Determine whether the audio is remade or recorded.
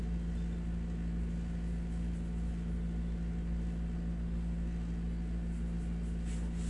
recorded